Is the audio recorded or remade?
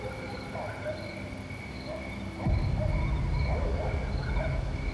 recorded